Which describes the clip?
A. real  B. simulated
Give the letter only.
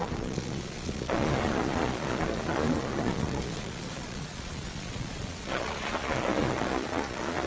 B